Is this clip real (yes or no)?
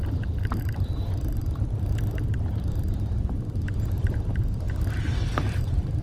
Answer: no